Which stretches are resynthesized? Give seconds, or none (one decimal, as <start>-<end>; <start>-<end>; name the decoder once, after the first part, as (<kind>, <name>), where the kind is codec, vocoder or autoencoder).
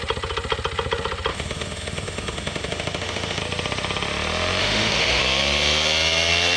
1.3-3.4 (autoencoder, DAC-VAE); 4.6-5.2